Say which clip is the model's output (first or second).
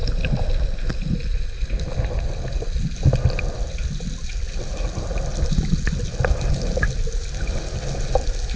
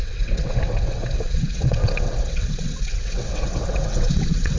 second